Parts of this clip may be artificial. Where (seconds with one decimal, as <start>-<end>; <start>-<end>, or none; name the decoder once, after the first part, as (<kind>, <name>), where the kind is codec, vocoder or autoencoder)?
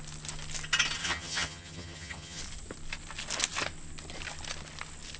1.0-2.4 (vocoder, HiFi-GAN)